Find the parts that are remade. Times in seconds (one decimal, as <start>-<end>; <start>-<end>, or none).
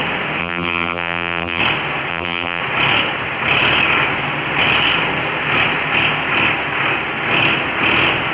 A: 0.4-1.6; 2.1-2.6